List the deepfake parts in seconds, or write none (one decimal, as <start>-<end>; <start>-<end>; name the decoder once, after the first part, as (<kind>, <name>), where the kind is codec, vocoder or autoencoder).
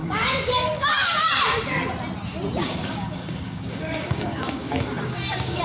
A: 0.0-1.3 (codec, DAC); 2.6-5.6